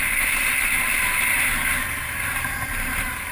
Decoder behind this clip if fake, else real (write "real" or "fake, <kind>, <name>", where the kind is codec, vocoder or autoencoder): fake, vocoder, BigVGAN v2